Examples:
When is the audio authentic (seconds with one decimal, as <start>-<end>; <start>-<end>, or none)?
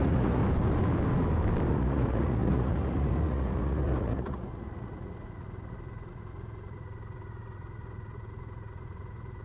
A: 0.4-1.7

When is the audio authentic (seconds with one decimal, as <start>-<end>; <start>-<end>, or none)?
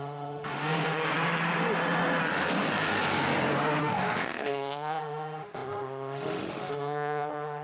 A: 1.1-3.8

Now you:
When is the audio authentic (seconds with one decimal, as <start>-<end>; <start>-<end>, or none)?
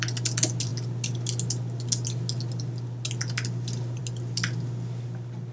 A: 0.0-5.5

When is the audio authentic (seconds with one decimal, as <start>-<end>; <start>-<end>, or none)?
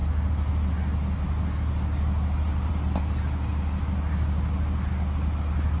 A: 0.0-5.8